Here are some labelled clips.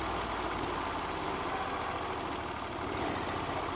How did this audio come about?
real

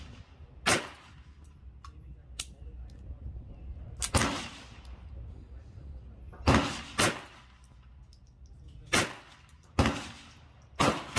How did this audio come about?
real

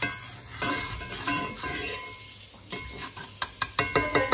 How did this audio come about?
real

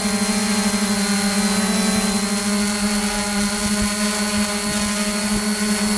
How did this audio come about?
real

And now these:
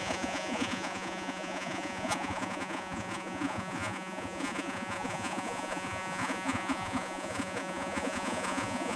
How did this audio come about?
fake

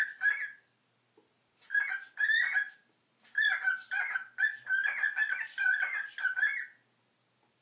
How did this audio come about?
real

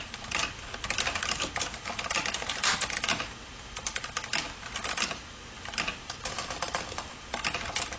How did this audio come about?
real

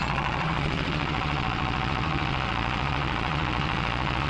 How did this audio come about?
fake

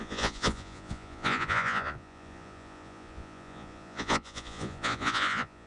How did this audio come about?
fake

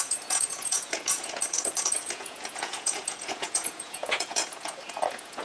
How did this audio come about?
fake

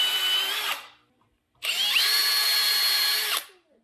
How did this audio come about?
real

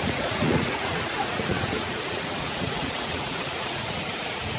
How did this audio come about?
fake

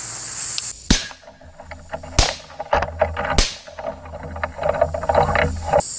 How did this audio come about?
real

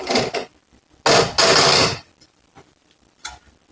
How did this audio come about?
real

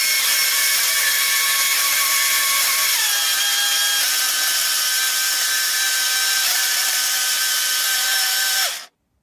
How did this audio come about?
real